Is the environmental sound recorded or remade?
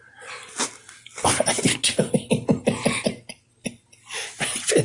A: recorded